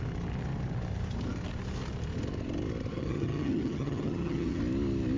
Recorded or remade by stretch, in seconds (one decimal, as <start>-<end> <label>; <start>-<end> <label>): 0.0-2.9 recorded; 2.9-4.6 remade; 4.6-5.2 recorded